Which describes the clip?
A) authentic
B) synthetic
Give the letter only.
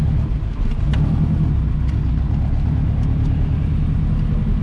A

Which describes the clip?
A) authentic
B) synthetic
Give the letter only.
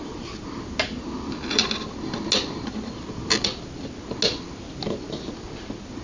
A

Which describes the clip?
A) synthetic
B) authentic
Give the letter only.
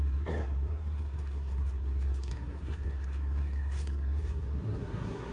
A